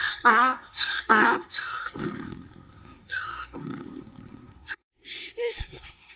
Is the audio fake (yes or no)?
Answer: yes